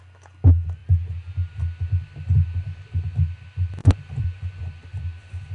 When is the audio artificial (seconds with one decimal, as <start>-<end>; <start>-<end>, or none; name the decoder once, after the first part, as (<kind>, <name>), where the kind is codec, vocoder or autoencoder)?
3.8-4.6 (vocoder, Vocos)